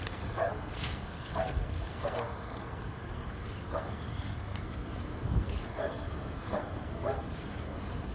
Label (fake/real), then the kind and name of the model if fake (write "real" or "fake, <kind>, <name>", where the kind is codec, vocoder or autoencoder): fake, codec, SNAC